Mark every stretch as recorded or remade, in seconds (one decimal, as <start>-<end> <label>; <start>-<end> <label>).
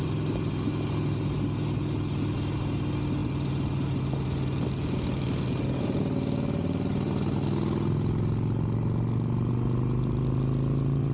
0.0-11.1 recorded